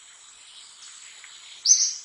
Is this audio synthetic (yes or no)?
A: no